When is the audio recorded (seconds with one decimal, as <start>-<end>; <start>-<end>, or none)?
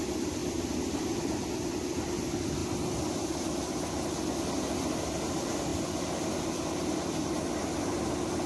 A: 0.0-2.6; 4.5-5.7; 6.3-8.5